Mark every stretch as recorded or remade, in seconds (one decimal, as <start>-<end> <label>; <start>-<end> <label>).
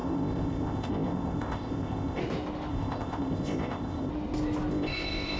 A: 0.0-2.2 remade; 2.2-2.7 recorded; 2.7-4.1 remade; 4.1-4.7 recorded; 4.7-5.4 remade